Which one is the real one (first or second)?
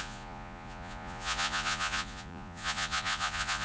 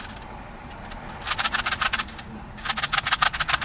second